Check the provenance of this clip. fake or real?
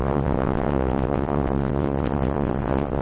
fake